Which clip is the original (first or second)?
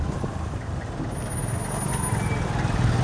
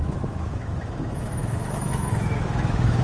first